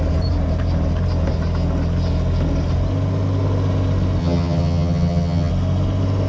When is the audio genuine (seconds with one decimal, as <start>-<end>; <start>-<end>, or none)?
0.0-4.2; 5.5-6.3